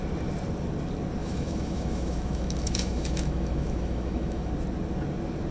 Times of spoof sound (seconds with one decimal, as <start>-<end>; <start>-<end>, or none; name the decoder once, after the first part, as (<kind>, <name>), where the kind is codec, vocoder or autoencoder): 1.2-4.5 (autoencoder, DAC-VAE)